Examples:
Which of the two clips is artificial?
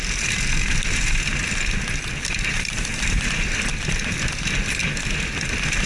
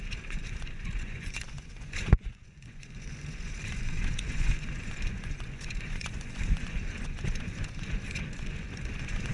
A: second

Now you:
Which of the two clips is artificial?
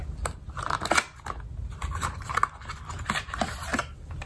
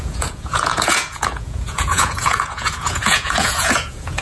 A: second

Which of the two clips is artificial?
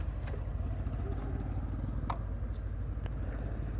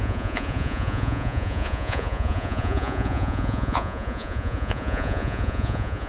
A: second